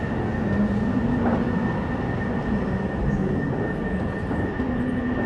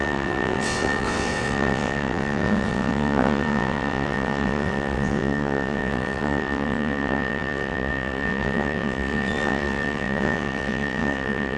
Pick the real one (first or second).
first